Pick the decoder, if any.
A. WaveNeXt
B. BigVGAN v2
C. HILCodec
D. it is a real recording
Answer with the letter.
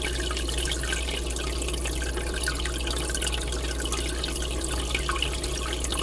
D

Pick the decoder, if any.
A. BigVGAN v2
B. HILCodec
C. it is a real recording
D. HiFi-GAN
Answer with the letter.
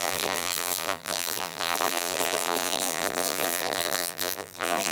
A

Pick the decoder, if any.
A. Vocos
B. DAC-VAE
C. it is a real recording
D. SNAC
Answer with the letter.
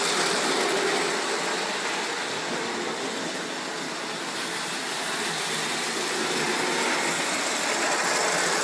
C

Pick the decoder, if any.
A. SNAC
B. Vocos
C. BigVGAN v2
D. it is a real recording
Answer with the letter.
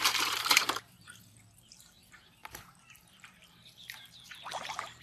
C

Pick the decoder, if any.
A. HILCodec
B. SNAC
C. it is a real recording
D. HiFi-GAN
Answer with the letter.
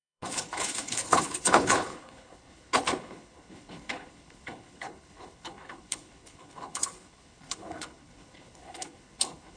A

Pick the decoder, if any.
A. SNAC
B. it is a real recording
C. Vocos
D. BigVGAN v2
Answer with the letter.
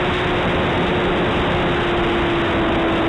B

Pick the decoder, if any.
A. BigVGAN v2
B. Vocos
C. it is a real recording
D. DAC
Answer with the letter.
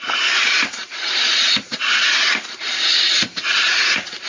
A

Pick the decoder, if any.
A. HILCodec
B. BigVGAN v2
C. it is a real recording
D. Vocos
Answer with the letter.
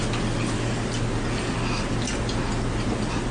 C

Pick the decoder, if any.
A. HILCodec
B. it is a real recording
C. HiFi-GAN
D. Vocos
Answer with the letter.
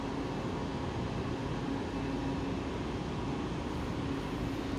B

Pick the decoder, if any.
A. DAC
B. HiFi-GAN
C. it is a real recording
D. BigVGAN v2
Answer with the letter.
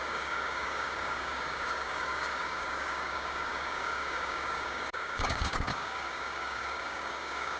A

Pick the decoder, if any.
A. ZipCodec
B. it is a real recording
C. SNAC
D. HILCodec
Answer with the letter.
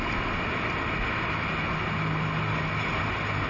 B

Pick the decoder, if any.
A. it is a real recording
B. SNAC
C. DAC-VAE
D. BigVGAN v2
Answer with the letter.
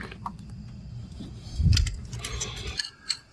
A